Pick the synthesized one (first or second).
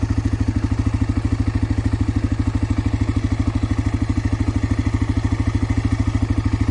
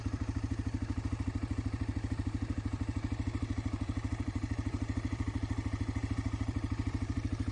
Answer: second